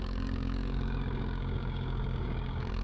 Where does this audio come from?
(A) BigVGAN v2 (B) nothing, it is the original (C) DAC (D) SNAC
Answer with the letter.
C